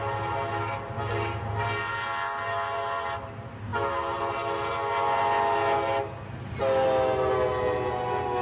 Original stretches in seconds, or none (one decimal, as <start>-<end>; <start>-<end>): 0.0-8.4